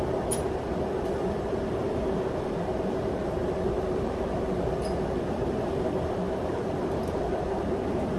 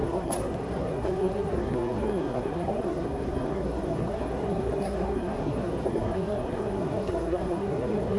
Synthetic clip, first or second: second